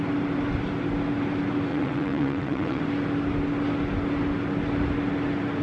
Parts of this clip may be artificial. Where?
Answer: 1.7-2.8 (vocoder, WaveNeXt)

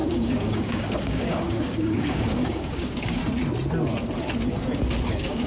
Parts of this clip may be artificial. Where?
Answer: 0.0-3.2 (codec, DAC); 5.1-5.5